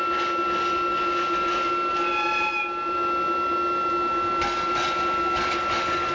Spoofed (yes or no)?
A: no